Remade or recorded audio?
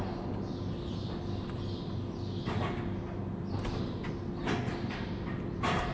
recorded